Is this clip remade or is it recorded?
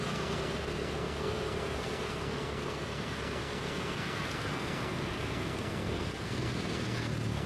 remade